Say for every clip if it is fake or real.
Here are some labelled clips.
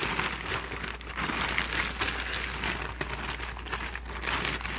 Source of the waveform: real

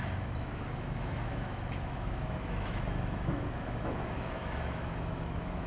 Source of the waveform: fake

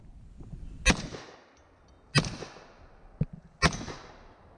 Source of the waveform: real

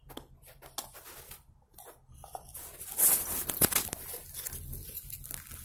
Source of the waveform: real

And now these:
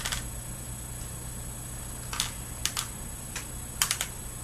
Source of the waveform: real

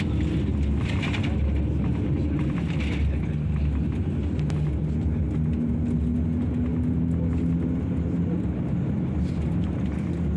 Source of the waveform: real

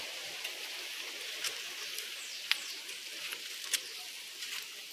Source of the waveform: real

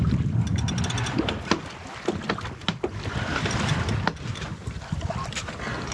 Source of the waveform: real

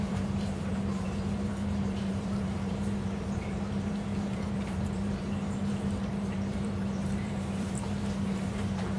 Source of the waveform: fake